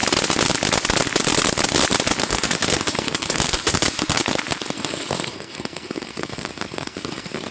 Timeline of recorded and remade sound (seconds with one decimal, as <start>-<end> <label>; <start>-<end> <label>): 0.0-2.2 recorded; 2.2-7.5 remade